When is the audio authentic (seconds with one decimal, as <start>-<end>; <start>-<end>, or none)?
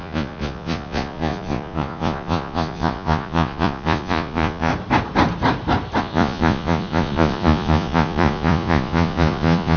4.7-6.0